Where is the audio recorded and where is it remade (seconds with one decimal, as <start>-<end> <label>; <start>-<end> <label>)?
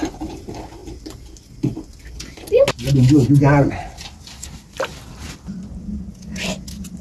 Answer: 0.0-7.0 recorded